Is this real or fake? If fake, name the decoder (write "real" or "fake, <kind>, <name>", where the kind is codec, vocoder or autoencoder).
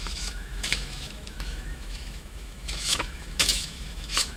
fake, autoencoder, DAC-VAE